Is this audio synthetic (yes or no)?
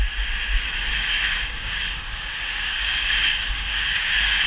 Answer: yes